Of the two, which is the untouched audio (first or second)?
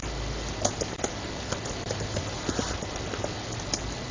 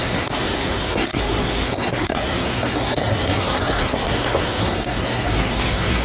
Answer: first